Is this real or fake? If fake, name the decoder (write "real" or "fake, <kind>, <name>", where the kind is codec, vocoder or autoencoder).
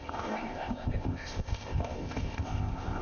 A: fake, codec, ZipCodec